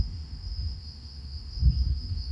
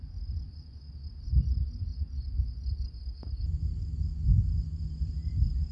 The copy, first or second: first